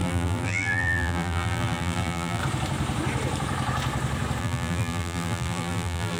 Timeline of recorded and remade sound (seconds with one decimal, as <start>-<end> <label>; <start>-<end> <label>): 0.0-2.4 remade; 2.4-4.4 recorded; 4.4-6.2 remade